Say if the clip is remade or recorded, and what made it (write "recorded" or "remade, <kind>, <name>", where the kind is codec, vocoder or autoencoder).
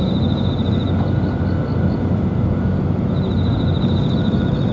recorded